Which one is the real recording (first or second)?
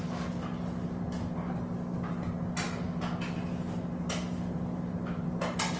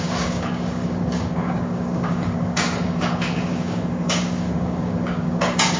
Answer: first